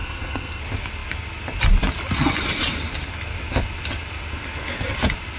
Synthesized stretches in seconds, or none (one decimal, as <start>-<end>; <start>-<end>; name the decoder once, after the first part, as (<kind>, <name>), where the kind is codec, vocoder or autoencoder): 0.0-0.6 (codec, SNAC)